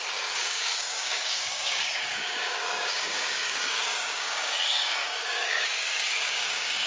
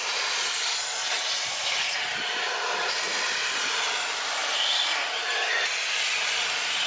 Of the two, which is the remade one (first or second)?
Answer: first